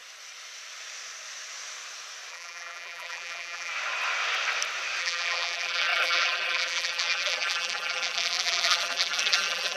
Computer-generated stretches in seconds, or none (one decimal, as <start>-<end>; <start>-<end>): 2.3-3.7; 5.0-9.8